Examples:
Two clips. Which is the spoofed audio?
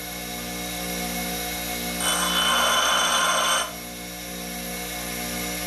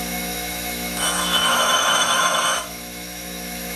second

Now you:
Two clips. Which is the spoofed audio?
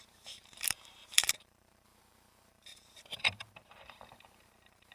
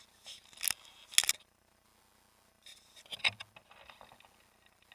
first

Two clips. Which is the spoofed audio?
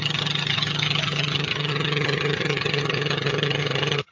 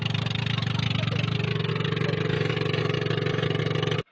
first